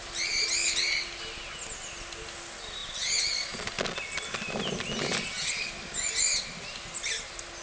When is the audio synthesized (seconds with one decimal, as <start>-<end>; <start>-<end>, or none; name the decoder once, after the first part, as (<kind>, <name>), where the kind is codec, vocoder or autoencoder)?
none